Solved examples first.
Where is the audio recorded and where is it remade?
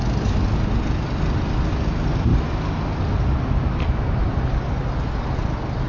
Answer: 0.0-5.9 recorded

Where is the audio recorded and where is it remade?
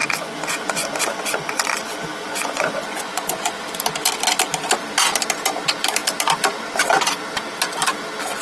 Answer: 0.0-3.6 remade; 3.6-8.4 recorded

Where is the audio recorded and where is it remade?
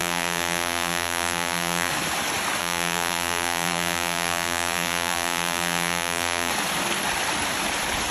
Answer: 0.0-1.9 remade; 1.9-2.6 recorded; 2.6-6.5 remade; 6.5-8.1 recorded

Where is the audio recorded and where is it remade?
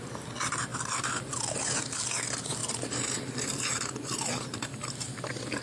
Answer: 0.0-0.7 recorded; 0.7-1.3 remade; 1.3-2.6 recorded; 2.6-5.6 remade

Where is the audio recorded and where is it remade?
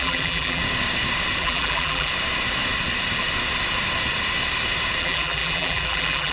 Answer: 0.0-0.6 remade; 0.6-1.4 recorded; 1.4-2.1 remade; 2.1-5.0 recorded; 5.0-6.3 remade